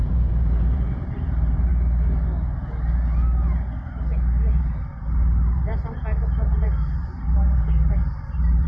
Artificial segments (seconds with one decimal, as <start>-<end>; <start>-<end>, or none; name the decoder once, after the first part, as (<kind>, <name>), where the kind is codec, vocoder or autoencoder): 0.0-1.7 (vocoder, BigVGAN v2); 4.5-6.0; 6.6-8.7